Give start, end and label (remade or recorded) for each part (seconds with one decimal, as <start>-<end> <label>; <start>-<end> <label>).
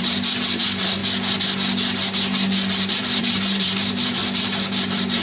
0.0-1.0 remade; 1.0-2.9 recorded; 2.9-5.2 remade